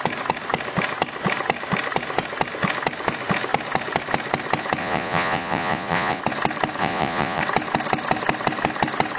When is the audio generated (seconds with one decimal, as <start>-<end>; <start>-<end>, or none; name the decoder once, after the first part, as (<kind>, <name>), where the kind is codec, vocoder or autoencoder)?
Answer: 4.8-6.2 (vocoder, Vocos); 6.8-7.4